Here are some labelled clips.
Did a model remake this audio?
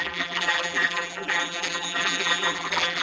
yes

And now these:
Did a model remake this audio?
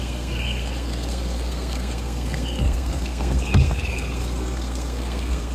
yes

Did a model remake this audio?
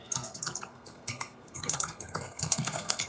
yes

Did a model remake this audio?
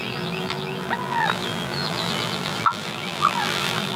yes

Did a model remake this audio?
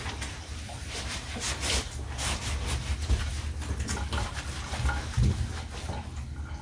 no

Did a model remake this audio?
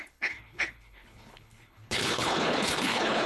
yes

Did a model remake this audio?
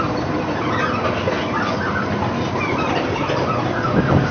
no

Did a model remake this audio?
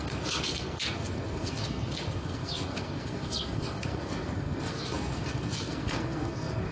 yes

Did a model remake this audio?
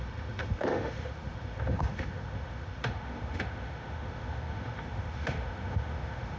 yes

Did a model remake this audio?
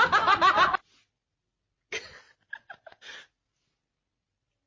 no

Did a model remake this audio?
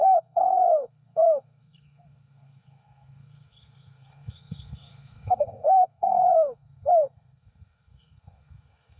yes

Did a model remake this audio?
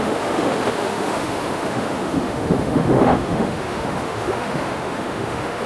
yes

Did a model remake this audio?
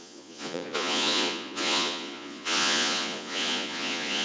yes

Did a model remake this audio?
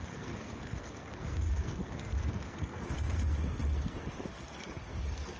yes